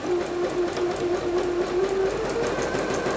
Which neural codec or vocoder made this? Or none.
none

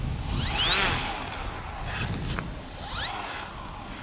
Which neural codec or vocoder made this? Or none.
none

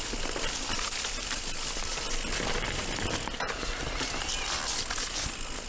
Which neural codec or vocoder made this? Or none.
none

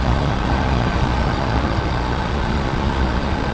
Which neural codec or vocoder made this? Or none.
vocoder, Vocos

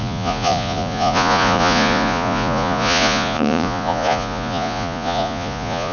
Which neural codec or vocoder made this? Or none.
vocoder, Vocos